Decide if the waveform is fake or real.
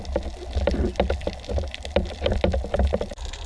real